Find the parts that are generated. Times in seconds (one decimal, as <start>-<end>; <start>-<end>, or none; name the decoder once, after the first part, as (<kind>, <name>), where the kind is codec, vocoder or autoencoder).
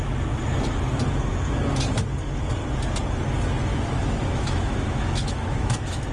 3.7-6.1 (autoencoder, DAC-VAE)